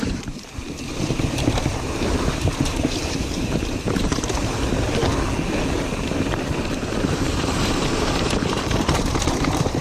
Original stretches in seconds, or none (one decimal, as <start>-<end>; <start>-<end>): 5.0-5.7